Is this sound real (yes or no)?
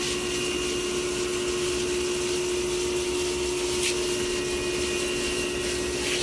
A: yes